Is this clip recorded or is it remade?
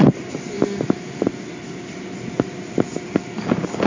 recorded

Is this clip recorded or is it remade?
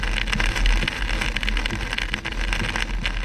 recorded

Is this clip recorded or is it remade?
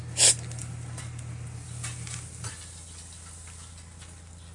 recorded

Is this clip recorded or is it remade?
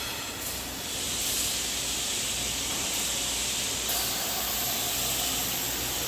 recorded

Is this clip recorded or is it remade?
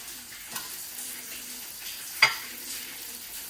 recorded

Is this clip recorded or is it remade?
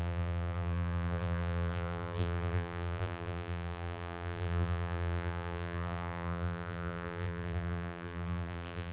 remade